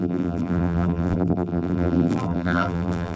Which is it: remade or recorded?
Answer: remade